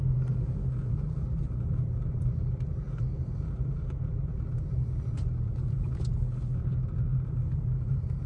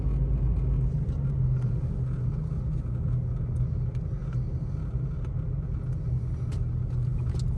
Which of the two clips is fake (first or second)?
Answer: first